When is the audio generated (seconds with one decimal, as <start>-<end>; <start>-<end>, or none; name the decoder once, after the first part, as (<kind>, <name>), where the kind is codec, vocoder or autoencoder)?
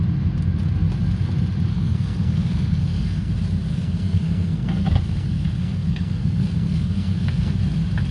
1.7-3.3 (codec, SNAC); 3.7-7.6